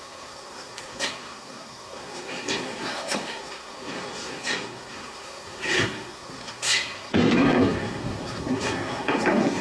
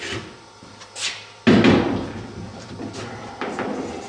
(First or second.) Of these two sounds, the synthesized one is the first